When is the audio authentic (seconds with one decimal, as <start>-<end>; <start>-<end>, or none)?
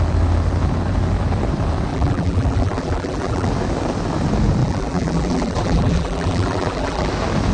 0.0-1.9; 3.5-4.6; 7.1-7.5